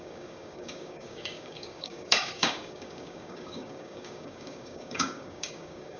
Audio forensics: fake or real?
fake